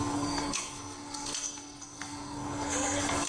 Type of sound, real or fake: fake